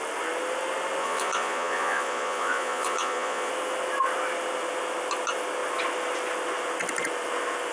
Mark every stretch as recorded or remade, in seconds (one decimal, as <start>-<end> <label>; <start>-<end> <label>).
0.0-1.0 recorded; 1.0-3.5 remade; 3.5-7.7 recorded